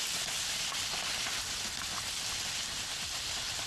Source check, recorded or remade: recorded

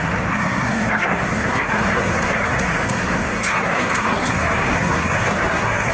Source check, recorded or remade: remade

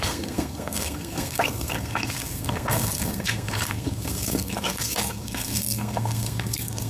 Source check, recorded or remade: remade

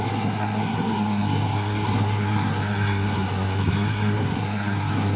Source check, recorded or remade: remade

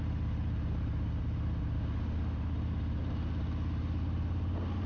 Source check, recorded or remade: recorded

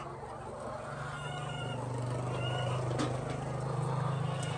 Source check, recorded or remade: recorded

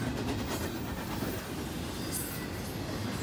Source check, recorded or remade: recorded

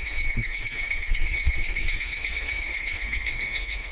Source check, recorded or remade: remade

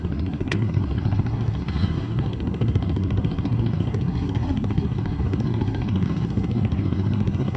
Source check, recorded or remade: remade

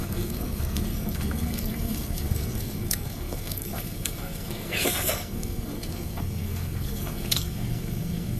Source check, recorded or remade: remade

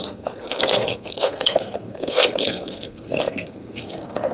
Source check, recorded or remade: remade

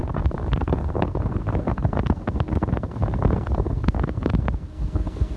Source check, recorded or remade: remade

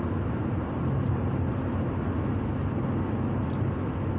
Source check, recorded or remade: recorded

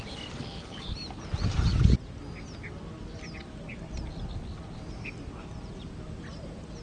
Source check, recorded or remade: recorded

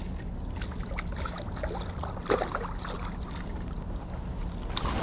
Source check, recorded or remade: recorded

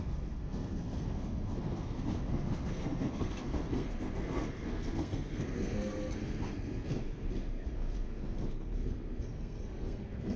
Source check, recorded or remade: remade